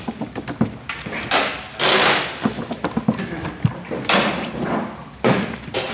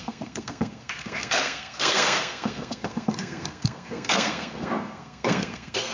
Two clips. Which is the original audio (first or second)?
first